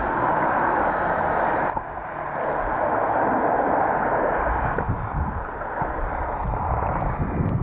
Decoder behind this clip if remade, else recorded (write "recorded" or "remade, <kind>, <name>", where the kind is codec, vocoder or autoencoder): recorded